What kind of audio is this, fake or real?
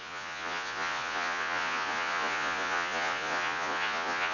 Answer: fake